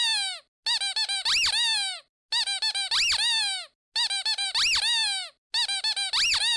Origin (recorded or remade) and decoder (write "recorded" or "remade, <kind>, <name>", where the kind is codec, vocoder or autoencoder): recorded